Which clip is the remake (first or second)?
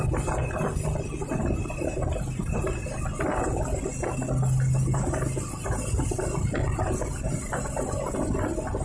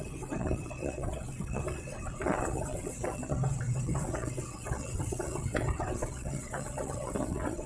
second